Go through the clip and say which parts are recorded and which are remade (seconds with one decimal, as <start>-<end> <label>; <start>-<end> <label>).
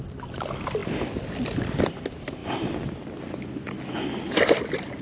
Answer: 0.0-5.0 recorded